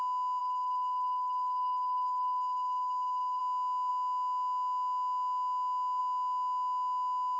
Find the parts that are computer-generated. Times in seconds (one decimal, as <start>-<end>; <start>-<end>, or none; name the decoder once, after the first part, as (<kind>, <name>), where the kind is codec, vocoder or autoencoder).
0.4-3.4 (codec, DAC)